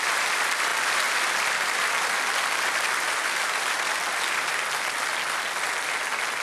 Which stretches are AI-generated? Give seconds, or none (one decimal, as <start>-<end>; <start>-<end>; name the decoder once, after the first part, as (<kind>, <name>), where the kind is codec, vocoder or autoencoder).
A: none